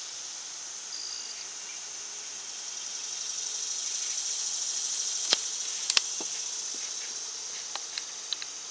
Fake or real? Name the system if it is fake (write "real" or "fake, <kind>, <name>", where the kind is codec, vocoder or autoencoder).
real